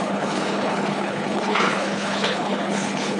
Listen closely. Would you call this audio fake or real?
fake